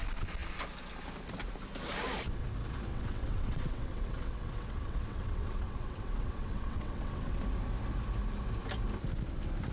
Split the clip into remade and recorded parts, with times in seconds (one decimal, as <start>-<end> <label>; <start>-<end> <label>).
0.0-2.9 recorded; 2.9-7.4 remade; 7.4-9.7 recorded